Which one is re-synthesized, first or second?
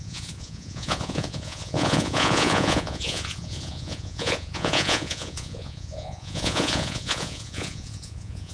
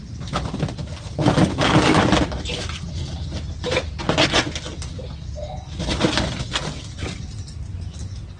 first